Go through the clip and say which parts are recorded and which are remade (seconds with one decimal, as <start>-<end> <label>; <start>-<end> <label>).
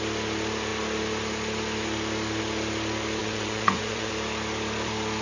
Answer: 0.0-3.2 recorded; 3.2-4.1 remade; 4.1-5.2 recorded